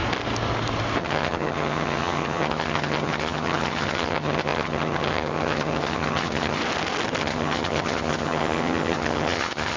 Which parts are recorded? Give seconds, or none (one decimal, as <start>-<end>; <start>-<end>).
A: 0.0-1.0; 6.6-7.2